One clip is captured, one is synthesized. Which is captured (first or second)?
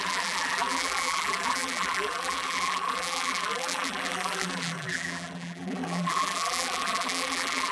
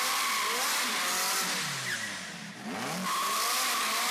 second